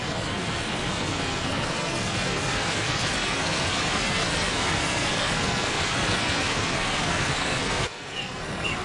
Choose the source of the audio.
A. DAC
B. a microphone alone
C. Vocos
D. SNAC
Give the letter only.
D